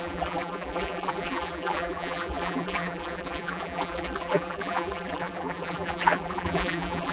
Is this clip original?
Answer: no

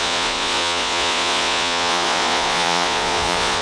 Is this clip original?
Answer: no